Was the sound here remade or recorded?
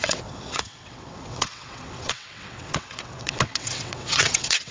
remade